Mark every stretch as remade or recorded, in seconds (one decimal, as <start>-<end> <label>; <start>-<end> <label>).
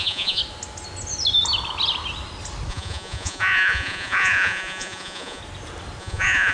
0.0-0.4 remade; 0.4-2.7 recorded; 2.7-5.4 remade; 5.4-6.0 recorded; 6.0-6.5 remade